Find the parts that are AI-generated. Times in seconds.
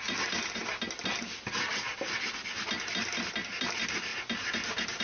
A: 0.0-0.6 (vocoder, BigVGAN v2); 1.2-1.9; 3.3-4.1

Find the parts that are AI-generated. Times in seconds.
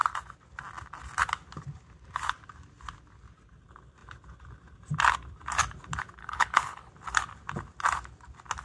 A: 6.2-6.9 (codec, HILCodec)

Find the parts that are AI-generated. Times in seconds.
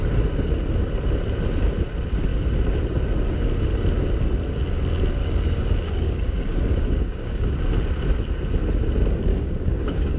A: 5.2-7.6 (codec, DAC); 9.3-10.2